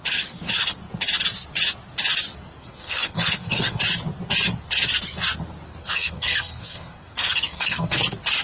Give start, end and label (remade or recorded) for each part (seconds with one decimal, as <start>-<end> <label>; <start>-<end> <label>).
0.0-2.6 recorded; 2.6-3.8 remade; 3.8-5.8 recorded; 5.8-8.0 remade; 8.0-8.4 recorded